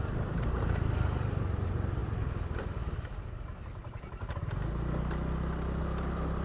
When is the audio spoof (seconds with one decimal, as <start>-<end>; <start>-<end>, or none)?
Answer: none